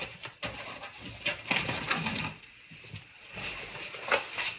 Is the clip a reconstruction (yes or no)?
no